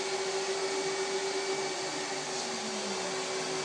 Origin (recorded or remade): recorded